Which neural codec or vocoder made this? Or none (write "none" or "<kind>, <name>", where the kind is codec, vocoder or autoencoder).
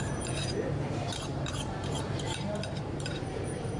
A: vocoder, BigVGAN v2